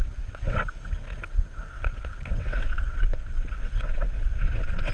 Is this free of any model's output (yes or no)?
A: no